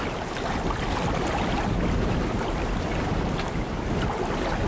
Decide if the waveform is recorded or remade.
recorded